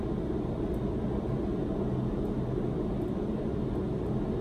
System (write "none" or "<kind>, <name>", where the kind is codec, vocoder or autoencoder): none